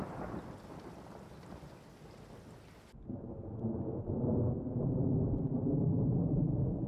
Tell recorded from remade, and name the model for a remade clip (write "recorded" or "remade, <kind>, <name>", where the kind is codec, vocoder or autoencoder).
recorded